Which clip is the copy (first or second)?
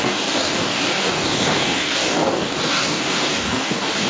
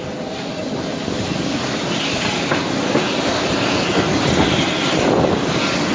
first